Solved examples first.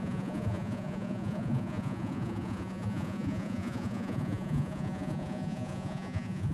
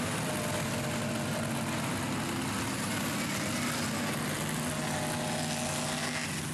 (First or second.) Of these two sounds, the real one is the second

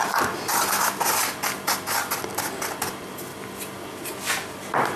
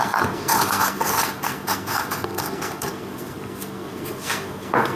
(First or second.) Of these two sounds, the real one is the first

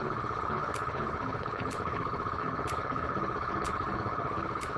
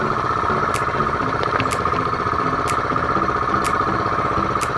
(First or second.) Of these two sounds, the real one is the second